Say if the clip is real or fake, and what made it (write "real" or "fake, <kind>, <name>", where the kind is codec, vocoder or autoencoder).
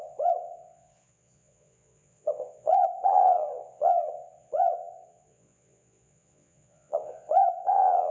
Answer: fake, vocoder, Vocos